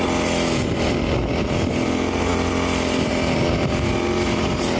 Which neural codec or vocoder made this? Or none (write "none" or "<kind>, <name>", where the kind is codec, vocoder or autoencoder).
none